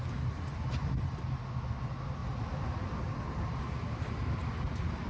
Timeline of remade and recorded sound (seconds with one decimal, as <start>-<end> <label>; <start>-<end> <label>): 0.0-2.2 recorded; 2.2-3.0 remade; 3.0-5.1 recorded